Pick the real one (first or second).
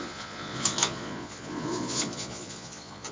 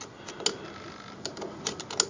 second